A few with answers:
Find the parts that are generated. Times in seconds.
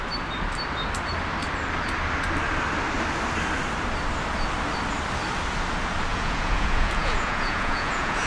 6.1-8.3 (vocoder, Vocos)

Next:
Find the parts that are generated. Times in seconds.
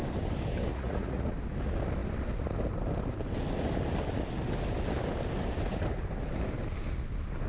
0.7-1.3 (vocoder, Vocos)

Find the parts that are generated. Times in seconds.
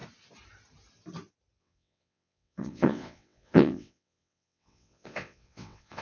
1.6-6.0 (vocoder, WaveNeXt)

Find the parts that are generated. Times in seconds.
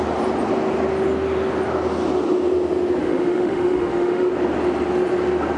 3.0-4.3 (autoencoder, DAC-VAE)